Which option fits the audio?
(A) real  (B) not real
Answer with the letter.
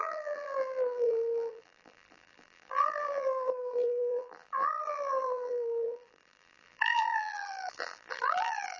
B